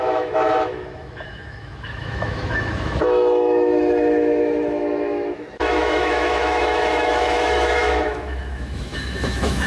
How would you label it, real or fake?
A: fake